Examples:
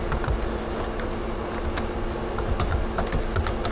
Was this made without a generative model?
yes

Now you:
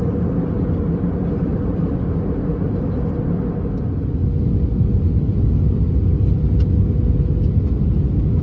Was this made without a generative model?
yes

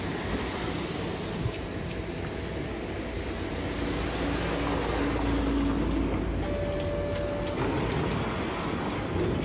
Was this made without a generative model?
yes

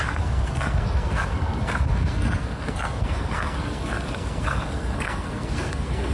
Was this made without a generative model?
no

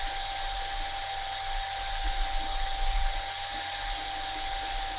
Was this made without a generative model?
yes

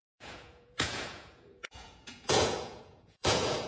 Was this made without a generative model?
no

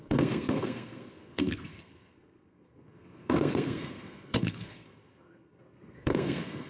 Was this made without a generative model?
no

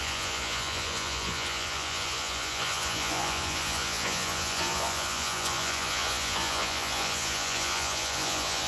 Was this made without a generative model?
no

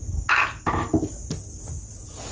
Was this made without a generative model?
yes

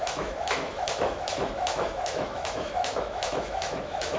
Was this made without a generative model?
no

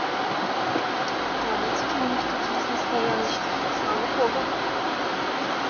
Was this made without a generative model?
yes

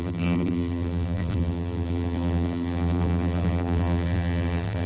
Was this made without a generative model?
no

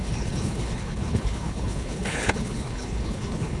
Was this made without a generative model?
no